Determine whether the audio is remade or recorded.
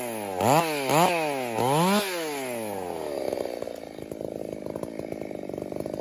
recorded